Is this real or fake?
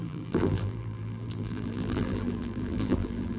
fake